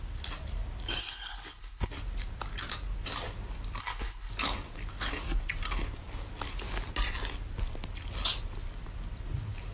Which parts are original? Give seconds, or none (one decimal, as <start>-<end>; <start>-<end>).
0.0-1.0; 1.9-3.8; 4.3-9.7